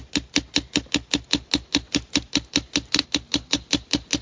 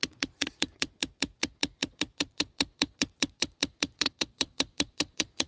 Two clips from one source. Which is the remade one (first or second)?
second